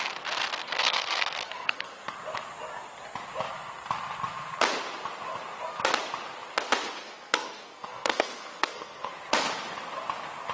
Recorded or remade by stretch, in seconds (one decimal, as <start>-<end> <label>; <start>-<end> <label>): 0.0-0.6 recorded; 0.6-2.1 remade; 2.1-7.0 recorded; 7.0-9.1 remade; 9.1-10.5 recorded